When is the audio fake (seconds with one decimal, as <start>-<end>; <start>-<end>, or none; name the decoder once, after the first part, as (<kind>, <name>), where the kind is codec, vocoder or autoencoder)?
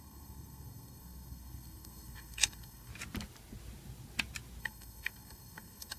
0.0-2.9 (codec, SNAC); 4.6-6.0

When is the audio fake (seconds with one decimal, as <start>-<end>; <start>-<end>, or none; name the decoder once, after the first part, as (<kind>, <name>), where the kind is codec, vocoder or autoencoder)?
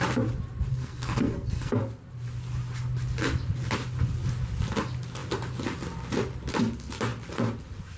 0.7-1.8 (codec, SNAC)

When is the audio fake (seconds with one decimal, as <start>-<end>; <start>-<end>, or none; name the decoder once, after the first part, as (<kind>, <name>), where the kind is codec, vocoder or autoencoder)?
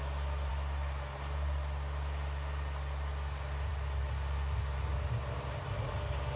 none